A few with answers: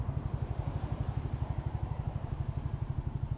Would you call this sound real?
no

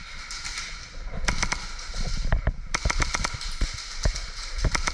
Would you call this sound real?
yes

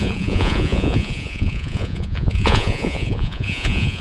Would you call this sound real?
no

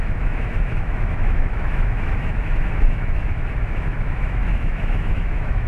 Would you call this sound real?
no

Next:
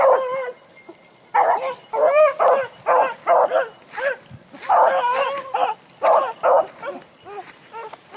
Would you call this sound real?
yes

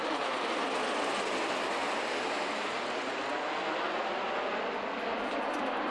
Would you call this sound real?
yes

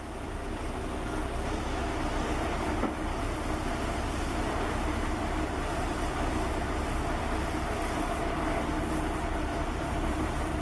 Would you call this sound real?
yes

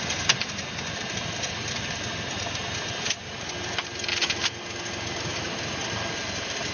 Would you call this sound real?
yes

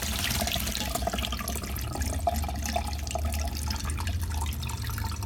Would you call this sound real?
yes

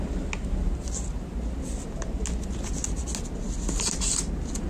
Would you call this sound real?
yes